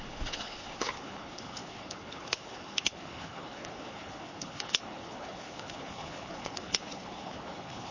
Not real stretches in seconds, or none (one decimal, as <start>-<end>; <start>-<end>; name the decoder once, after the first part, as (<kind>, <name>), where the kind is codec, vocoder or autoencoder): 0.0-7.9 (codec, HILCodec)